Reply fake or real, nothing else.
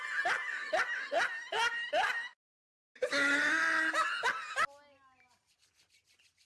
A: real